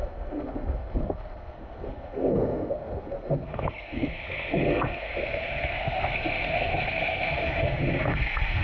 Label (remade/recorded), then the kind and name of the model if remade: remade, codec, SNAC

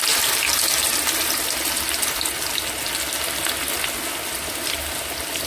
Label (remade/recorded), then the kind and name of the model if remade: recorded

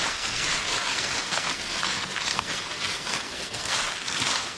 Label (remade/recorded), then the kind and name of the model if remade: remade, codec, SNAC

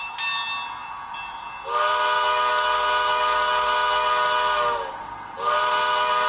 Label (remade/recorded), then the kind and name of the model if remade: recorded